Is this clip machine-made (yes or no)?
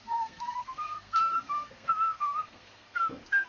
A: yes